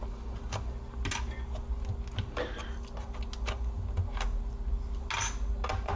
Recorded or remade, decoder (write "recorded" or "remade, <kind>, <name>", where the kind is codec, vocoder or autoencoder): recorded